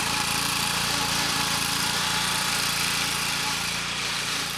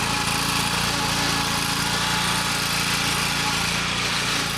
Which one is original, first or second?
second